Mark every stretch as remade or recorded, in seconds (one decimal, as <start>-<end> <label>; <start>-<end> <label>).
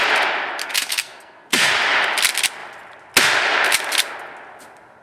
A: 0.0-0.6 recorded; 0.6-1.7 remade; 1.7-5.0 recorded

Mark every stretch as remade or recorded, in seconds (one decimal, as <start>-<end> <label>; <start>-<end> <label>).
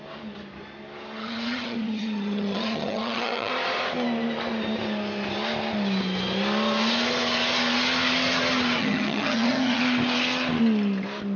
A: 0.0-1.2 recorded; 1.2-3.5 remade; 3.5-8.8 recorded; 8.8-9.8 remade; 9.8-11.4 recorded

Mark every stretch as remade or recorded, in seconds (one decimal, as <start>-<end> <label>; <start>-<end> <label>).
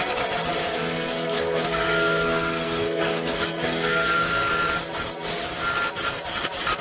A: 0.0-0.6 recorded; 0.6-4.5 remade; 4.5-6.8 recorded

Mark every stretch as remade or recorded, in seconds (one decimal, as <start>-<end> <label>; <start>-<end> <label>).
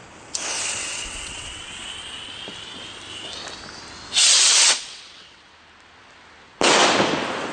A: 0.0-0.8 recorded; 0.8-1.8 remade; 1.8-4.3 recorded; 4.3-5.5 remade; 5.5-7.5 recorded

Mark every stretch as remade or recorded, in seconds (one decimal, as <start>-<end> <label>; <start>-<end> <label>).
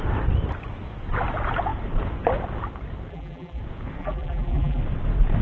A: 0.0-3.1 recorded; 3.1-3.6 remade; 3.6-4.0 recorded; 4.0-4.8 remade; 4.8-5.4 recorded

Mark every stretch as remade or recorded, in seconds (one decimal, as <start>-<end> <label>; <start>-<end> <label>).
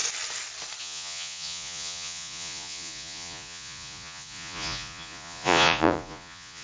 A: 0.0-0.8 recorded; 0.8-6.6 remade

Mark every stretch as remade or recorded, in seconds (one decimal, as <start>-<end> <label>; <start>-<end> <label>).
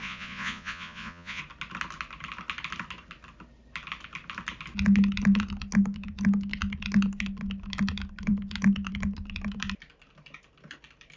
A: 0.0-1.4 remade; 1.4-11.2 recorded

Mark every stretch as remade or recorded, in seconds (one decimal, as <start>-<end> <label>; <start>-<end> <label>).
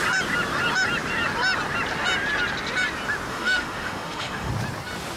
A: 0.0-3.3 recorded; 3.3-4.5 remade; 4.5-5.2 recorded